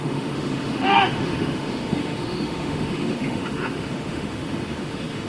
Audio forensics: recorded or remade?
remade